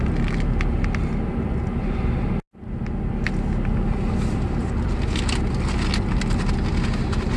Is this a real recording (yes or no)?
yes